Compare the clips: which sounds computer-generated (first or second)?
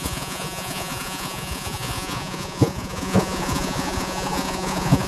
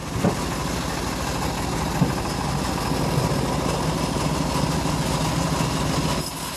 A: first